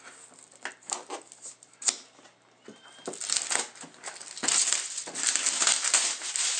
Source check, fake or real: real